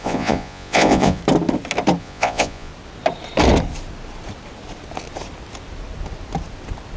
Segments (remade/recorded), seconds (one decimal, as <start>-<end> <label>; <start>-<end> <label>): 0.0-1.2 remade; 1.2-2.0 recorded; 2.0-2.7 remade; 2.7-7.0 recorded